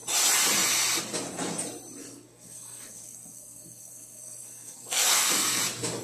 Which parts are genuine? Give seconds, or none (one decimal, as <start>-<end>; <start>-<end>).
0.0-2.0; 5.6-6.0